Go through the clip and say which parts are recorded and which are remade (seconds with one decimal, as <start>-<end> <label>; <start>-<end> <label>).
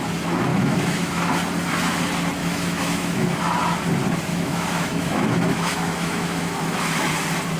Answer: 0.0-0.5 recorded; 0.5-1.3 remade; 1.3-2.4 recorded; 2.4-3.2 remade; 3.2-4.3 recorded; 4.3-7.1 remade; 7.1-7.6 recorded